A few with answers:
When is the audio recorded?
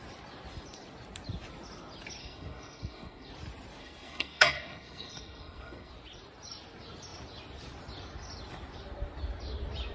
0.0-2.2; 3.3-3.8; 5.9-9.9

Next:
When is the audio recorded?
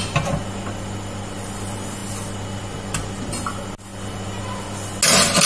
0.0-5.5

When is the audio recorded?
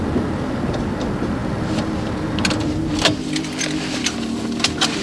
0.0-5.0